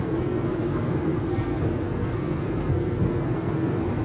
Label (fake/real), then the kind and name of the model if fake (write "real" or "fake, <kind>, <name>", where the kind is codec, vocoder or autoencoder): fake, codec, SNAC